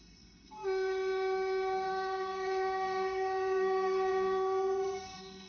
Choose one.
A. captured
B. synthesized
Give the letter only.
B